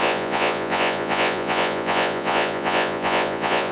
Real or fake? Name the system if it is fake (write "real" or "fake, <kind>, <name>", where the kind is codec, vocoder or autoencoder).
fake, vocoder, Vocos